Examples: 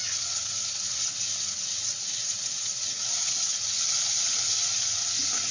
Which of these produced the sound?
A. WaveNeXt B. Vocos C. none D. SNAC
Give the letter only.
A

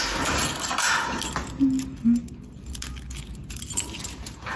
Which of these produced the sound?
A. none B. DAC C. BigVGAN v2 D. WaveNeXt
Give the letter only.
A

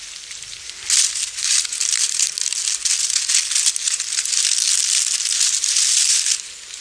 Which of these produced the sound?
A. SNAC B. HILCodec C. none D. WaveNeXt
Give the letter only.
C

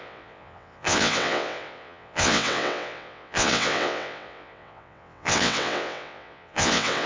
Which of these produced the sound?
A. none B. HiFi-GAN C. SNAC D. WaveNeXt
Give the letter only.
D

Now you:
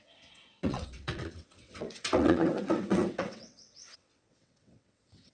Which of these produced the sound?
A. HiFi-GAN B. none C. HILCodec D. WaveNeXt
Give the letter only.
D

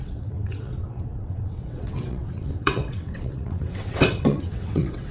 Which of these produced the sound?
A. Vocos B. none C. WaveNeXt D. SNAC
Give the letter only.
C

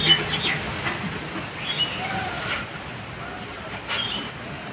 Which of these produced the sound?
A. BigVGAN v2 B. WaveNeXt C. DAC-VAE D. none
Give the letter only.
D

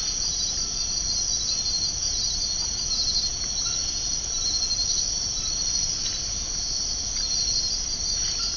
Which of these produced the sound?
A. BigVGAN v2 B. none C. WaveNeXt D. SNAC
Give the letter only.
B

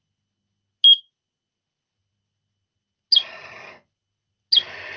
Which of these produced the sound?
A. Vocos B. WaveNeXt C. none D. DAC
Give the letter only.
C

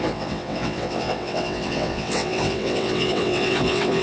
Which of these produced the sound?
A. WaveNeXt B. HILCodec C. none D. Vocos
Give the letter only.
A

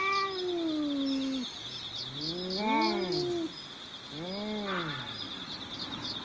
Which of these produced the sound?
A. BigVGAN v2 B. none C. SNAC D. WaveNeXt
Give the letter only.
B